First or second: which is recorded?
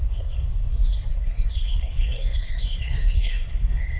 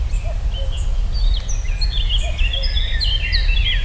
second